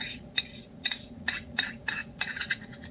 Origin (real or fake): fake